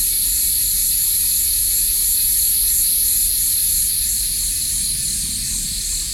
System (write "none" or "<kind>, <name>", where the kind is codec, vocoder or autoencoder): none